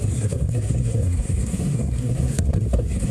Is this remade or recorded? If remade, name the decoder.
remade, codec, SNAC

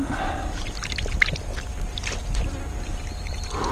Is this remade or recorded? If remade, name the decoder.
recorded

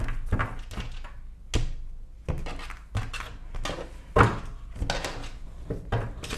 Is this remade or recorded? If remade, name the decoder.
recorded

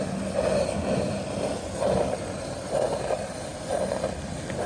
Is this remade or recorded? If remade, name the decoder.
recorded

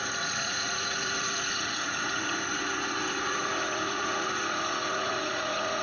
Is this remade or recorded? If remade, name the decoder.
remade, vocoder, Vocos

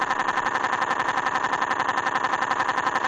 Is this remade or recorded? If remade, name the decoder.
recorded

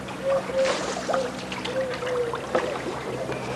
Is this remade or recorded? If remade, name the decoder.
recorded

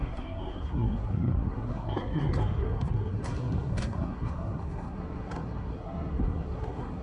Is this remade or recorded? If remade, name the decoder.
remade, codec, SNAC